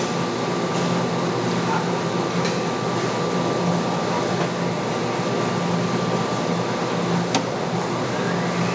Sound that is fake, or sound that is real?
real